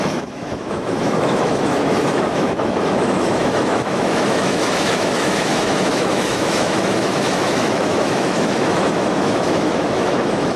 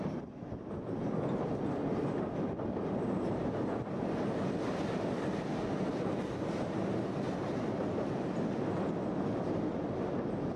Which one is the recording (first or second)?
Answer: second